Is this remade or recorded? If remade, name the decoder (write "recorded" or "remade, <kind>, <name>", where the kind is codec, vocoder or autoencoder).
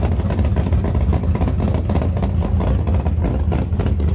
recorded